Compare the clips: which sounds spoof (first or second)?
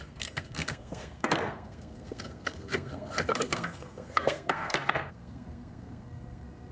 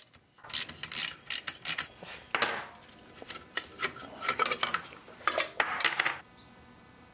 first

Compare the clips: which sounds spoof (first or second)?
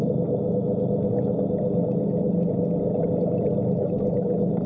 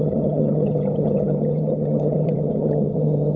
second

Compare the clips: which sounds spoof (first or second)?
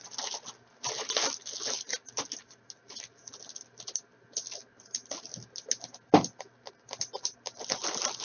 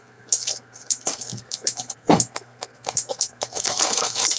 second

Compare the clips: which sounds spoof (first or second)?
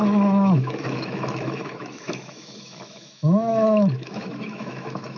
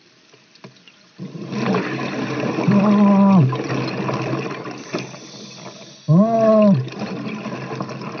first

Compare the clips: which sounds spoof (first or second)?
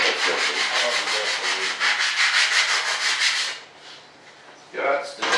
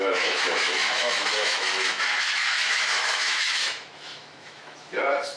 second